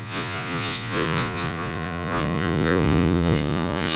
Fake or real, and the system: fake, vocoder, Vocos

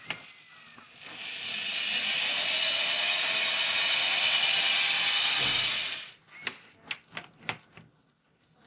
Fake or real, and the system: real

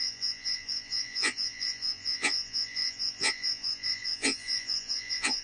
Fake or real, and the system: fake, vocoder, Vocos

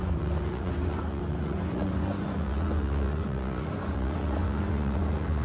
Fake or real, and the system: fake, vocoder, Vocos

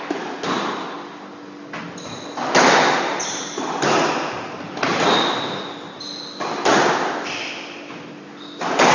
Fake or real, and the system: real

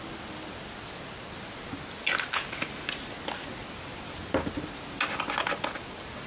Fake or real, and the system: real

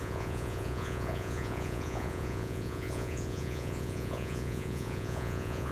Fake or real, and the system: fake, vocoder, Vocos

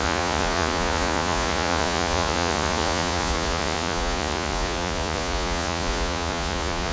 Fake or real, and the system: fake, vocoder, Vocos